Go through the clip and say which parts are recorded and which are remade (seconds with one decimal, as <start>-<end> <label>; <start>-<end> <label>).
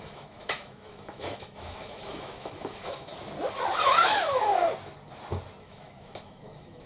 0.0-3.1 remade; 3.1-3.9 recorded; 3.9-4.5 remade; 4.5-5.6 recorded; 5.6-6.9 remade